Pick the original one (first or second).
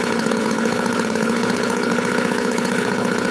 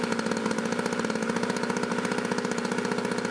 second